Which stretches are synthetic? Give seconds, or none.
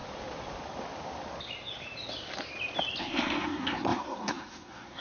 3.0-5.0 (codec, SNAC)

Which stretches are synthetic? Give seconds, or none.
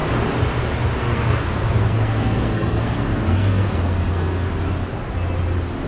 1.0-4.5 (codec, SNAC)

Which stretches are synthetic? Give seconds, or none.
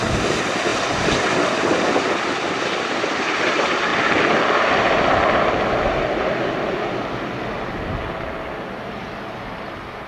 3.9-6.0 (vocoder, BigVGAN v2)